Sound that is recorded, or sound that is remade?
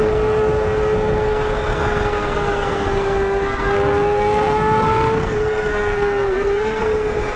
remade